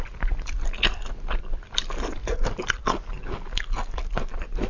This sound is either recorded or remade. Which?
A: recorded